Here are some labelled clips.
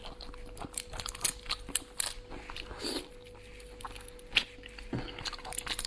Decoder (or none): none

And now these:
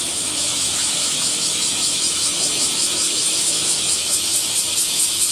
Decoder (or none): autoencoder, DAC-VAE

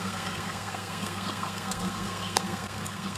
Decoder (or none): codec, SNAC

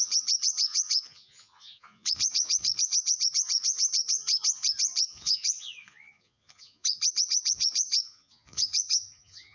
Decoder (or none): vocoder, Vocos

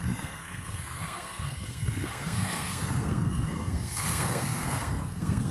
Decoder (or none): codec, SNAC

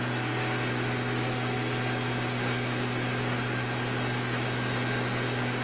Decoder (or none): none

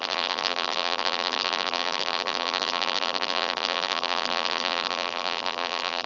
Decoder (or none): vocoder, BigVGAN v2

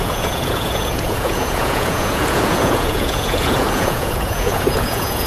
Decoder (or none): vocoder, Vocos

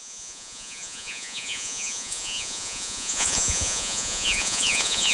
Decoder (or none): vocoder, Vocos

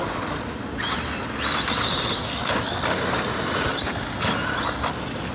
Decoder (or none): none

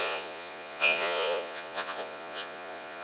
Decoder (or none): vocoder, Vocos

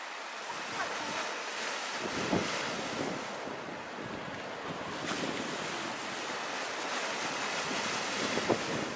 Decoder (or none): none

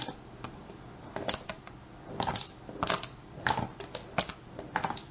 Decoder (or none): none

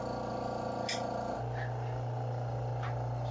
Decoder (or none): none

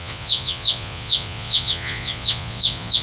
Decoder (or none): vocoder, Vocos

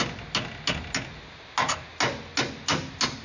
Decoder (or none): none